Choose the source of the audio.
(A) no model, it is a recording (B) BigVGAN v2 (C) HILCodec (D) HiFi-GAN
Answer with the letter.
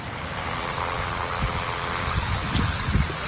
B